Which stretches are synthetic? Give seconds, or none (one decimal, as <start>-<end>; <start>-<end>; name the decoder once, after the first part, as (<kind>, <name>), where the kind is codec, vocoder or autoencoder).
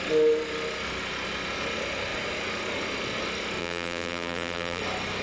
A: 3.6-4.8 (vocoder, BigVGAN v2)